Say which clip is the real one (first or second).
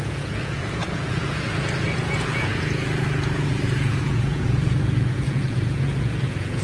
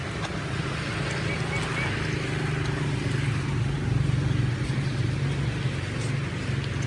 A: second